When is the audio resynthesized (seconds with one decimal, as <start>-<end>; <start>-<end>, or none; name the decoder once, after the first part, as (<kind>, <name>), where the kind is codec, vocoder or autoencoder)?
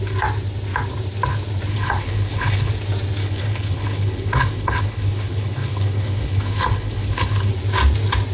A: 1.7-2.7 (codec, HILCodec); 3.2-7.5